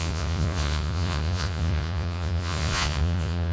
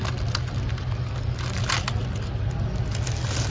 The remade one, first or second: first